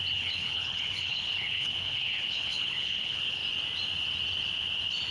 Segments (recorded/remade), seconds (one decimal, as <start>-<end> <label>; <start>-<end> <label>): 0.0-3.4 remade; 3.4-5.1 recorded